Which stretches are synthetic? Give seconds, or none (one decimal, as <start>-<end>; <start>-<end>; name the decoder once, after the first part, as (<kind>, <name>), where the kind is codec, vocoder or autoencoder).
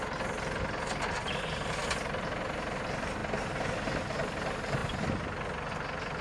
none